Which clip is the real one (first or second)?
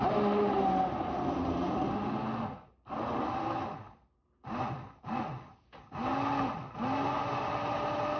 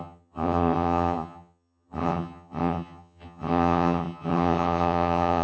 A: first